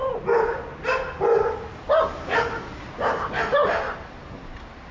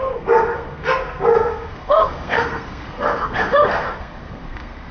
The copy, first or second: second